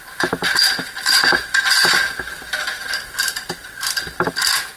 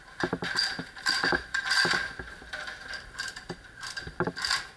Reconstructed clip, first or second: second